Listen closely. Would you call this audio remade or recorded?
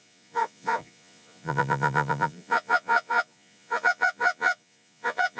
remade